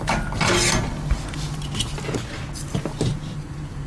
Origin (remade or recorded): recorded